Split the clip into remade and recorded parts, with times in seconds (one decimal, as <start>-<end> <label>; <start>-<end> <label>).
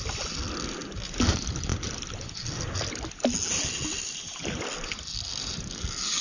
0.0-6.2 recorded